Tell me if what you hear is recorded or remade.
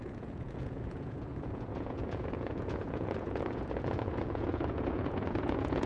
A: remade